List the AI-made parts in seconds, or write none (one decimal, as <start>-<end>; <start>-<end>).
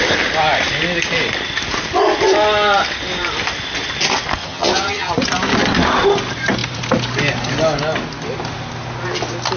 4.4-5.1